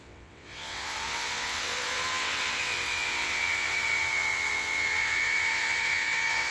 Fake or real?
fake